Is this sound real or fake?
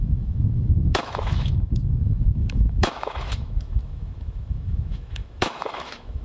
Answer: fake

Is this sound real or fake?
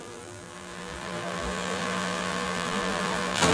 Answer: fake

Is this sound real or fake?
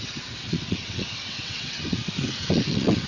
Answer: fake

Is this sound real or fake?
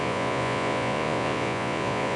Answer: fake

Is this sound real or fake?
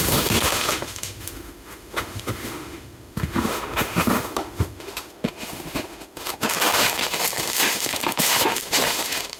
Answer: fake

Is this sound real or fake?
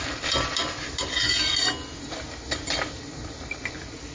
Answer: real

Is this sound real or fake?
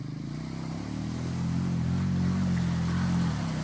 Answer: real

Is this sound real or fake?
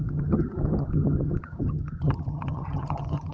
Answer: fake